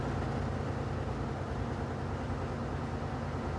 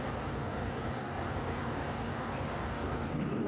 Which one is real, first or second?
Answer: first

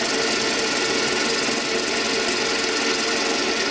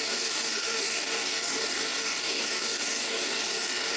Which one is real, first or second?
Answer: first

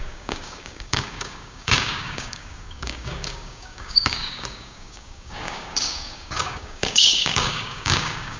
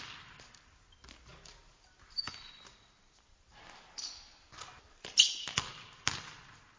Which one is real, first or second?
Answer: second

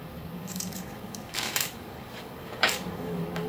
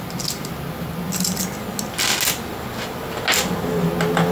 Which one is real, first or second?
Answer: second